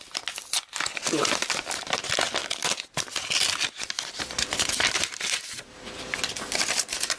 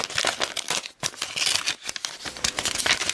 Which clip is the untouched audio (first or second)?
second